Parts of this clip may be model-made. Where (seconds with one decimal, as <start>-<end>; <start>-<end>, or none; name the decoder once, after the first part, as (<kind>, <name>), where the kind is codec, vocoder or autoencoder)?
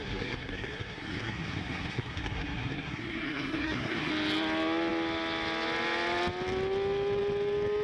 0.0-4.1 (codec, SNAC)